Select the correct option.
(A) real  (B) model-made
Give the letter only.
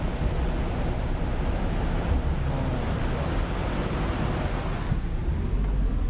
A